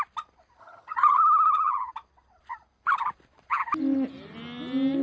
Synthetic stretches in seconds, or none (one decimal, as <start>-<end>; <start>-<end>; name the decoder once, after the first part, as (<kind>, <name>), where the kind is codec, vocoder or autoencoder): 0.6-1.2 (vocoder, HiFi-GAN)